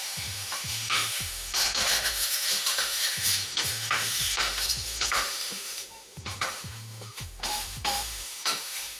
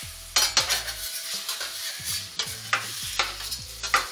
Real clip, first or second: second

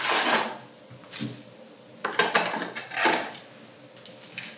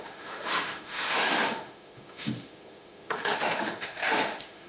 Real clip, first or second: first